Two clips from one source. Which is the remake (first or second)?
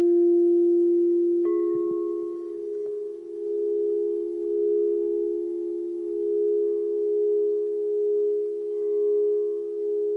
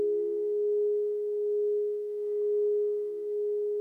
second